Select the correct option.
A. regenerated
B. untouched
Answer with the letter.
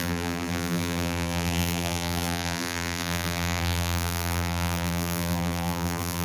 A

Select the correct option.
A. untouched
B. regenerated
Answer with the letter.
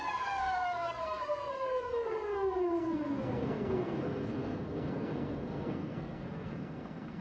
B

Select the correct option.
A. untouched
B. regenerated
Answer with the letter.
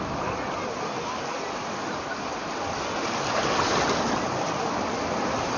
A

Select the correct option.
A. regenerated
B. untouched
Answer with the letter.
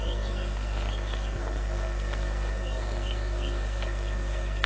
A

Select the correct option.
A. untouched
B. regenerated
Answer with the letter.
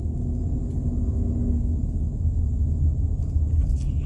A